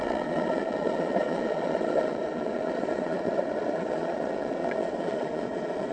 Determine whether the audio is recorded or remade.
remade